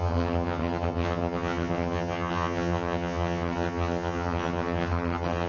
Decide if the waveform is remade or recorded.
remade